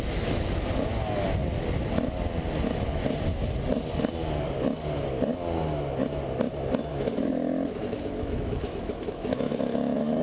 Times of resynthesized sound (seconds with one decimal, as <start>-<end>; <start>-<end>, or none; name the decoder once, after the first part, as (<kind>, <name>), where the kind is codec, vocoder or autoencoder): 6.9-10.2 (autoencoder, DAC-VAE)